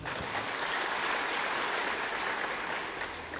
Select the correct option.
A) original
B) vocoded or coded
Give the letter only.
A